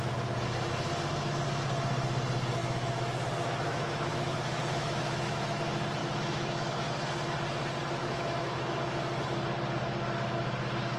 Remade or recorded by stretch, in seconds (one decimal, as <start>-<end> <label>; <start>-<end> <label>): 0.0-2.6 recorded; 2.6-5.6 remade; 5.6-6.0 recorded; 6.0-6.9 remade; 6.9-8.0 recorded; 8.0-9.0 remade; 9.0-11.0 recorded